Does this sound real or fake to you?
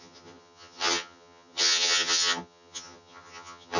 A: fake